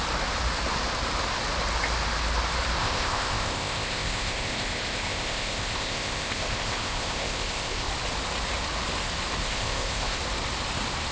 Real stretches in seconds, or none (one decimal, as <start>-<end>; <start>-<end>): 0.0-2.8; 7.9-9.4; 10.2-11.1